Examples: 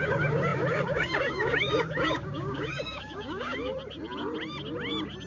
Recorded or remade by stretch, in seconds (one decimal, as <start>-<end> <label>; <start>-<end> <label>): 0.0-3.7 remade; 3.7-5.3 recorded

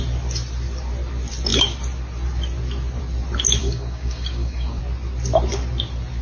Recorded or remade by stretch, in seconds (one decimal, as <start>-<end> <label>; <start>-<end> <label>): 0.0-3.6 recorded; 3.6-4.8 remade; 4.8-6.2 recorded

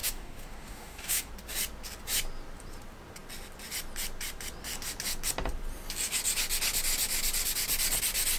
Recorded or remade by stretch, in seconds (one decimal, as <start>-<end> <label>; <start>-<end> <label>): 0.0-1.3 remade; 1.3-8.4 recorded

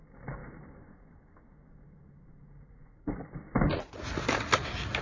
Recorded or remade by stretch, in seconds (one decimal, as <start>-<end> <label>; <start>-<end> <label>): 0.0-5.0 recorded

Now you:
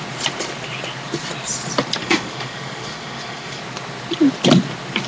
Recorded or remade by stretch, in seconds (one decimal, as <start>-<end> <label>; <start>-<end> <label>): 0.0-2.0 recorded; 2.0-3.6 remade; 3.6-5.1 recorded